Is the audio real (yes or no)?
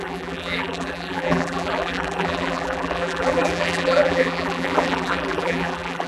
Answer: no